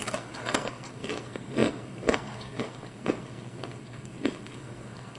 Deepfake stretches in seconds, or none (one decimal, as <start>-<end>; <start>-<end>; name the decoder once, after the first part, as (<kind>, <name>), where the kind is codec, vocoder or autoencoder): 0.0-5.2 (codec, SNAC)